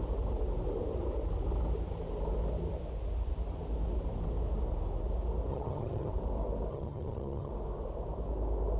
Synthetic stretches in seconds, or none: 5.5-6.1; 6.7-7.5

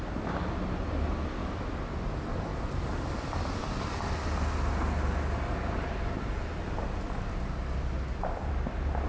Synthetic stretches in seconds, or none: none